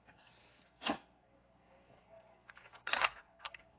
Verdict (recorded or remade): remade